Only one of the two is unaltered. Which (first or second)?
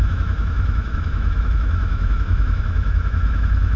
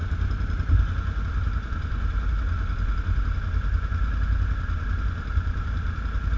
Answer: second